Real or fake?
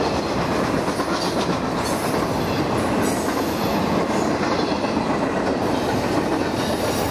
real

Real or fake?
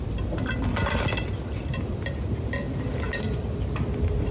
fake